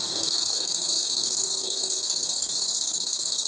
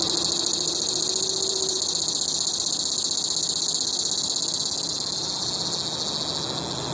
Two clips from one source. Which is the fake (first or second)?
first